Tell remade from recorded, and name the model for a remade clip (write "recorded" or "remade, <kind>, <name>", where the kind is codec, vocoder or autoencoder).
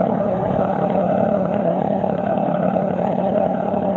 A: remade, codec, SNAC